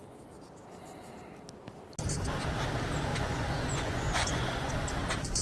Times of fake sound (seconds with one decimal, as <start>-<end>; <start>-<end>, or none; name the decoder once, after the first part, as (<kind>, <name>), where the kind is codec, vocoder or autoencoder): 3.1-4.7 (vocoder, Vocos)